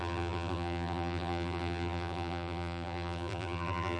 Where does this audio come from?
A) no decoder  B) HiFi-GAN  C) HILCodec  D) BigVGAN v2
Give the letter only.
D